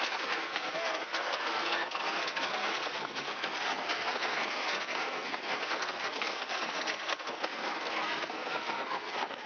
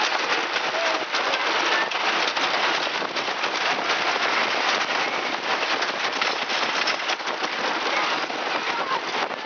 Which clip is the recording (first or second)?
second